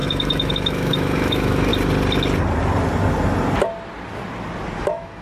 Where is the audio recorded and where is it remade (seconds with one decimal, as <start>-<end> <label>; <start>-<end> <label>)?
0.0-1.7 remade; 1.7-4.8 recorded; 4.8-5.2 remade